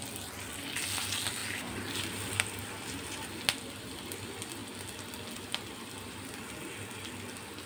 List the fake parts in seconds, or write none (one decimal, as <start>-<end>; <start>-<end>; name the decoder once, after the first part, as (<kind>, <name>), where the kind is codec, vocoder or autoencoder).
1.4-3.1 (vocoder, BigVGAN v2)